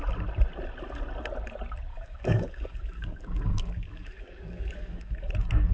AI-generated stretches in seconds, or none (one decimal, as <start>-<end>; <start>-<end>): 1.9-5.3

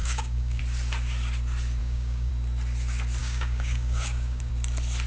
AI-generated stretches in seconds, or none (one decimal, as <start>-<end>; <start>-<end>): 0.0-0.6; 1.8-2.3; 3.2-4.5

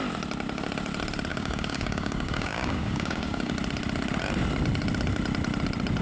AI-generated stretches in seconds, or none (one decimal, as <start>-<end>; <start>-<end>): 1.3-3.5

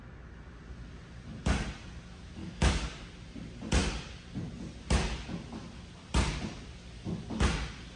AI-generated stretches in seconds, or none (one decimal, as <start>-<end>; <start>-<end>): 2.4-3.1